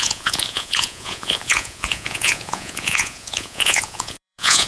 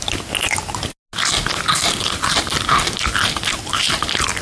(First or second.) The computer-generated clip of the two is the first